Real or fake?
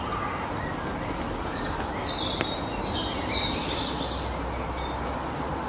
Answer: real